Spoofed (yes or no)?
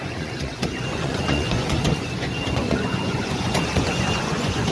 yes